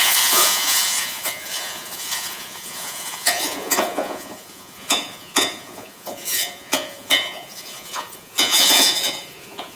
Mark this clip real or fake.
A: fake